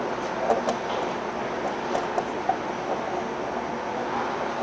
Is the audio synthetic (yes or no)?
no